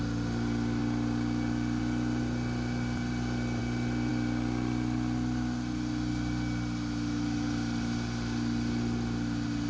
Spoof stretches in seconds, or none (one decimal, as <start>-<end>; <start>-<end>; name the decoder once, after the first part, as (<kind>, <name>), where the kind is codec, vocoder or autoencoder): none